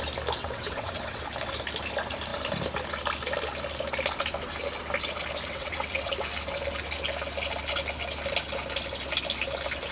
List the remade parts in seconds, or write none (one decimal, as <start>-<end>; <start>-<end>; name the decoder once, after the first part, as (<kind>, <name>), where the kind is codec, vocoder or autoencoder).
0.4-1.2 (vocoder, WaveNeXt); 5.5-6.1